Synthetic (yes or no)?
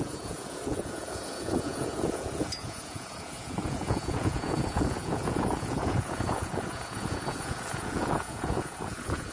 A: yes